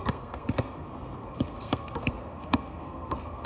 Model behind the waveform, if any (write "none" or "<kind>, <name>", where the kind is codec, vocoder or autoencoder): codec, SNAC